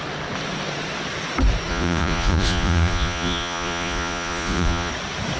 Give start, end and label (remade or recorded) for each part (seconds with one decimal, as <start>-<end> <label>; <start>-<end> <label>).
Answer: 0.0-1.7 recorded; 1.7-4.9 remade; 4.9-5.4 recorded